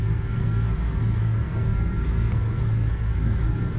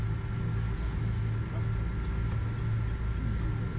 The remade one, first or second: first